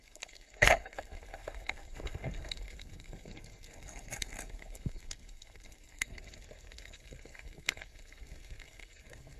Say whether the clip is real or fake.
fake